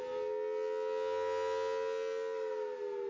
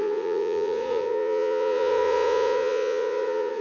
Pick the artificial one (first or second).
second